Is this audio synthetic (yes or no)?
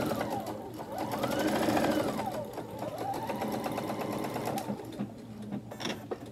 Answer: no